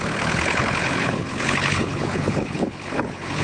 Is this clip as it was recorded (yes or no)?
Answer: no